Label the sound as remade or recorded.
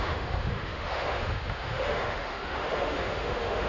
remade